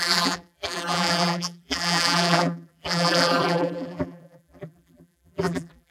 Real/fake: fake